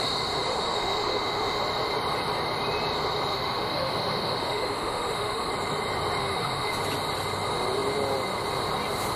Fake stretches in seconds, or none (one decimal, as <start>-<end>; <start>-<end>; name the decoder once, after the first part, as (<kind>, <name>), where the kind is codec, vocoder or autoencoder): 0.5-1.6 (autoencoder, DAC-VAE); 3.3-5.5; 6.2-6.8